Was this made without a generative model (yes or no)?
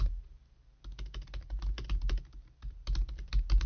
yes